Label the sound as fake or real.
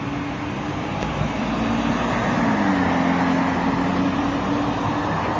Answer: real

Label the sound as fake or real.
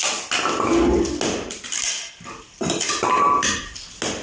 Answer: real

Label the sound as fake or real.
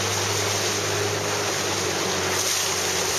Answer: real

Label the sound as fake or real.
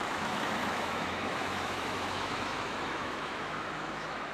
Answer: fake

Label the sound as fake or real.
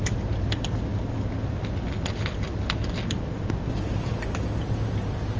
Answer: real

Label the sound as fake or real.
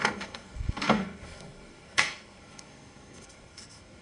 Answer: fake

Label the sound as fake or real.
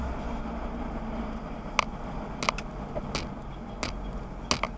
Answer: real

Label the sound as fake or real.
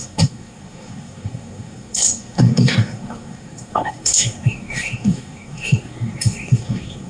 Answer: fake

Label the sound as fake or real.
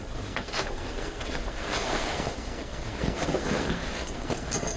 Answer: fake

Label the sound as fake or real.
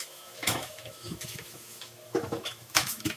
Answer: fake